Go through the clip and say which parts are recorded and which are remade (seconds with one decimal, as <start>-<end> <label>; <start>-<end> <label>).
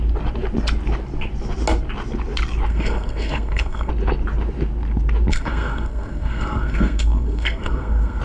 0.0-2.7 recorded; 2.7-3.9 remade; 3.9-5.3 recorded; 5.3-8.2 remade